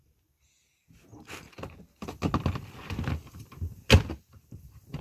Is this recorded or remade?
recorded